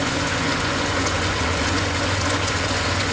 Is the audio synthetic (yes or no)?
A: yes